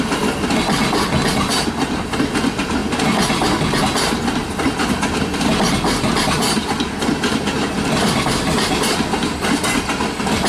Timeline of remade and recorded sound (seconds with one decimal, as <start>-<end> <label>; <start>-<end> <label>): 0.0-10.5 recorded